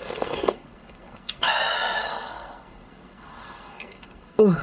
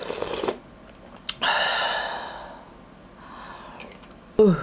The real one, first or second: second